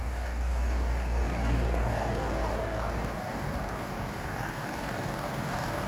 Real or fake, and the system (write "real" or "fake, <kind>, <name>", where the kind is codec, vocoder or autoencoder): fake, codec, DAC